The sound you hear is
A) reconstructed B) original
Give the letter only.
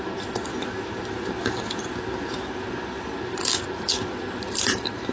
B